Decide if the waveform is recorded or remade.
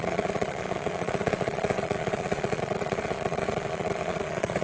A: remade